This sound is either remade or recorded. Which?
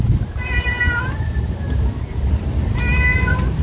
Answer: remade